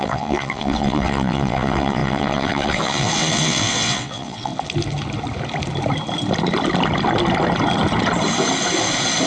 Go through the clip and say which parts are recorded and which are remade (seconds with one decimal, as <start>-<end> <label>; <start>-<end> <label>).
0.0-4.5 remade; 4.5-9.3 recorded